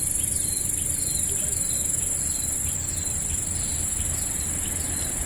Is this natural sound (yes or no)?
no